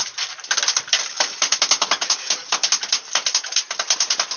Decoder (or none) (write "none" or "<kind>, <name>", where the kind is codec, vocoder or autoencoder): vocoder, BigVGAN v2